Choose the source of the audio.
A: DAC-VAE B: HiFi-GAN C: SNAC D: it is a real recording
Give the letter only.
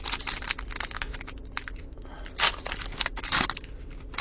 D